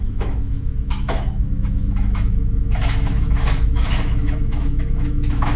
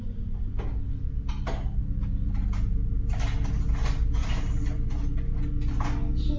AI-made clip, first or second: first